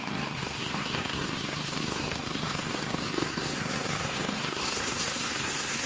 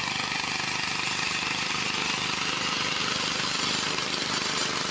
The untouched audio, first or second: second